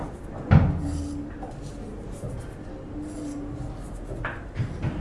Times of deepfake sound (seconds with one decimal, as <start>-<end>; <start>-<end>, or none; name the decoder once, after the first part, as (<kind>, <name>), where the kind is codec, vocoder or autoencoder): none